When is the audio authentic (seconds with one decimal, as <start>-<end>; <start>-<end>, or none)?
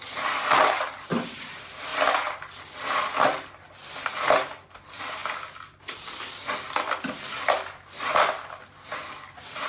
0.0-9.7